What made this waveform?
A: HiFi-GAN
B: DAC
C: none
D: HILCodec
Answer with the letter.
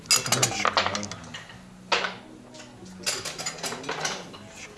C